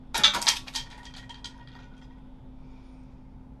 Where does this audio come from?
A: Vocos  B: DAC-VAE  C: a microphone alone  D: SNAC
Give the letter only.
C